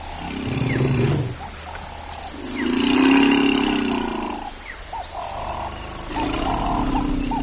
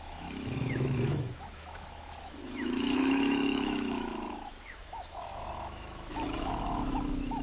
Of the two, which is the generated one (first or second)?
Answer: second